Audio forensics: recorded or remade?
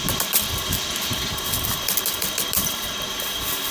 recorded